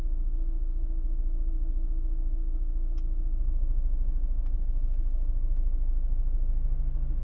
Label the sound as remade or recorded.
recorded